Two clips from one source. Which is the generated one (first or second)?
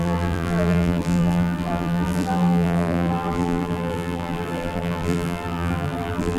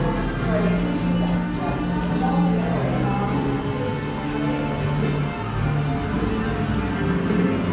first